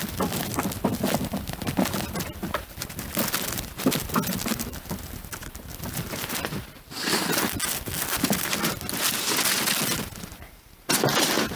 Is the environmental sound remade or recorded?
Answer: recorded